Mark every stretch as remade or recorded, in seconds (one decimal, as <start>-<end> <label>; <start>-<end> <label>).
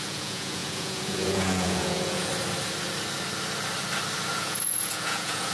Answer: 0.0-2.3 remade; 2.3-4.3 recorded; 4.3-5.5 remade